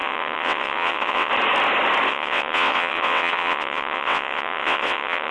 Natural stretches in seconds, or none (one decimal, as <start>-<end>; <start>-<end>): 1.3-2.1